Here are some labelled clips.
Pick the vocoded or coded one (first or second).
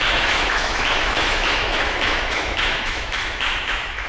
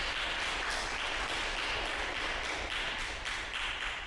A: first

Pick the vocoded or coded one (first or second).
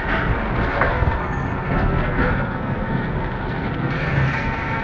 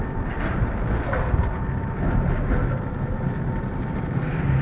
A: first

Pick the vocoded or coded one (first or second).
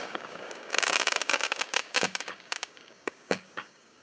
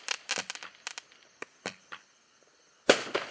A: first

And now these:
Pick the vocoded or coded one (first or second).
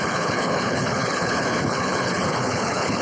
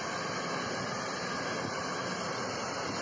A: first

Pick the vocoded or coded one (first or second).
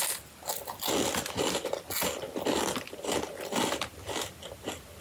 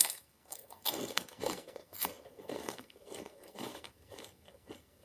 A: second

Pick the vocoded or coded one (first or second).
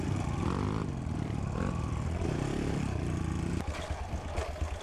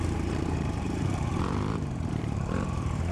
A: second